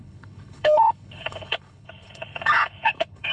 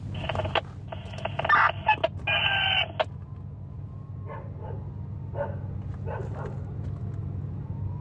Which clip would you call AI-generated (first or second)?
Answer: first